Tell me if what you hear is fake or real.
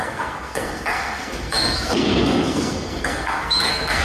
fake